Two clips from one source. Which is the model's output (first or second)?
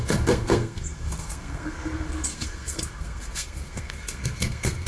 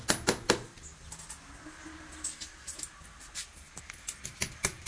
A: first